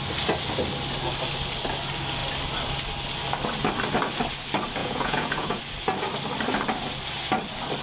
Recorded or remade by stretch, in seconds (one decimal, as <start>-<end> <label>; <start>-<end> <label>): 0.0-4.8 recorded; 4.8-5.6 remade; 5.6-7.8 recorded